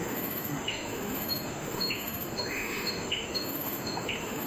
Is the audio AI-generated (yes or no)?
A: yes